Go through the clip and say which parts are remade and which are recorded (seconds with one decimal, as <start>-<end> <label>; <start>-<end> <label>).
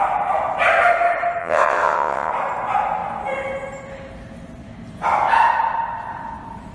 0.0-1.4 recorded; 1.4-2.3 remade; 2.3-6.7 recorded